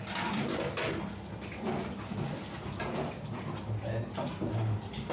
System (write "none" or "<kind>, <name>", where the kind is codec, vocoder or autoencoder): none